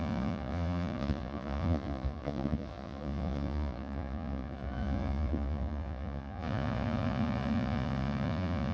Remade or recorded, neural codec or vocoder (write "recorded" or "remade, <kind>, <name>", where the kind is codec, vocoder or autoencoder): remade, vocoder, Vocos